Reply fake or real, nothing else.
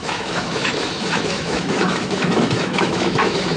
fake